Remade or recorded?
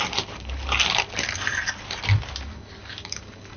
recorded